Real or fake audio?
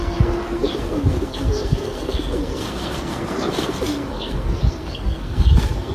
fake